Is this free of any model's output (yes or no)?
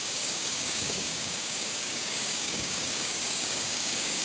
no